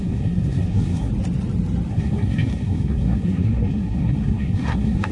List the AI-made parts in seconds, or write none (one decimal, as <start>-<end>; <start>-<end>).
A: 0.0-1.1; 1.9-5.1